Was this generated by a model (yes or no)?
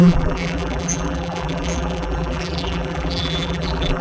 yes